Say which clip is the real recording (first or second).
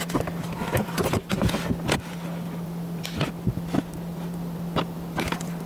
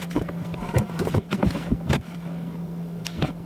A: first